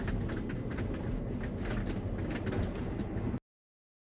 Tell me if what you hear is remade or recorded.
recorded